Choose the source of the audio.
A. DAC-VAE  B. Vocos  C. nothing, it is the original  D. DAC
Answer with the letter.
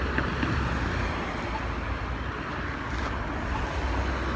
C